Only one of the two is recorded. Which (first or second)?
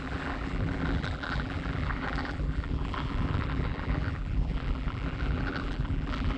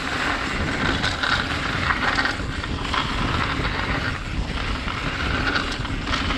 second